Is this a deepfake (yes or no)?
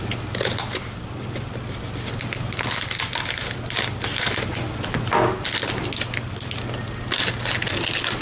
no